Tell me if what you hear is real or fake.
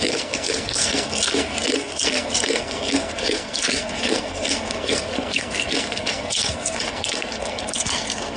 fake